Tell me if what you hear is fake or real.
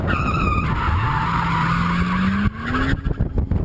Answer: real